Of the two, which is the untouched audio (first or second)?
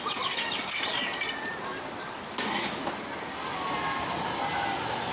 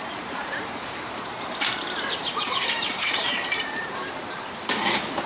first